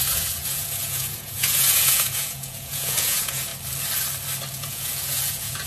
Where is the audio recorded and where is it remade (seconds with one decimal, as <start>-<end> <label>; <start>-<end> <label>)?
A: 0.0-3.5 remade; 3.5-4.5 recorded; 4.5-5.7 remade